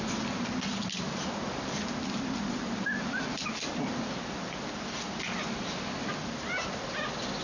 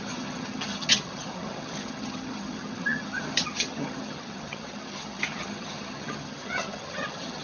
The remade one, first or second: second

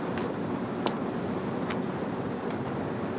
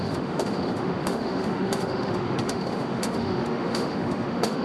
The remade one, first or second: second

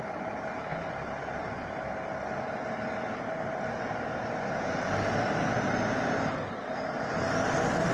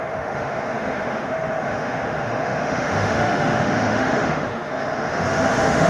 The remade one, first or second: second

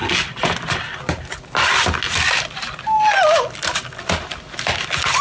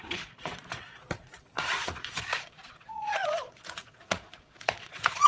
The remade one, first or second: second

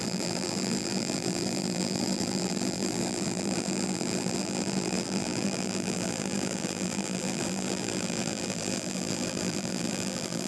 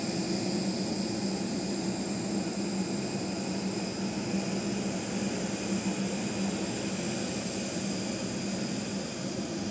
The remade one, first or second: first